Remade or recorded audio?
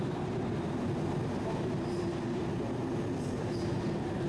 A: recorded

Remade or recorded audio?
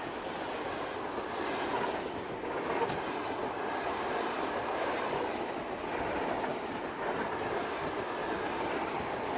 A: recorded